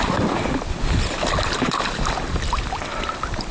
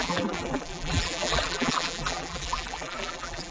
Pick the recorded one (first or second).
first